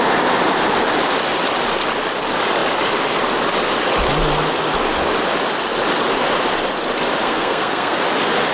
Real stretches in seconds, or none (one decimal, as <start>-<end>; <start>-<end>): 0.0-7.2; 8.0-8.5